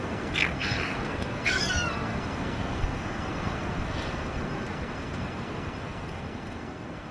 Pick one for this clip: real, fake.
fake